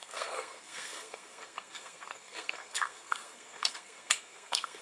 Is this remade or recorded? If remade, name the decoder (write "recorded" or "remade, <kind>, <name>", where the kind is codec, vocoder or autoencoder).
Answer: remade, codec, SNAC